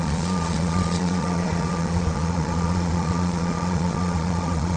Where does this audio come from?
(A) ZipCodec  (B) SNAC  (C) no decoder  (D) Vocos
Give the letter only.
D